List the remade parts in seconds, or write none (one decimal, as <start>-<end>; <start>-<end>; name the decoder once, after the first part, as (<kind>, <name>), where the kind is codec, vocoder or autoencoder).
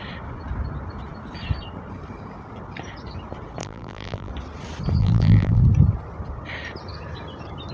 3.6-4.3 (vocoder, BigVGAN v2); 5.0-5.6